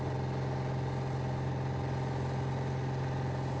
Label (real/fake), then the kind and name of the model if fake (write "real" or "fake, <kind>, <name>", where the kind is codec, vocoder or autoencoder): real